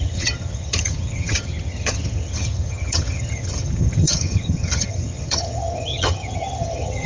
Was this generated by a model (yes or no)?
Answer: yes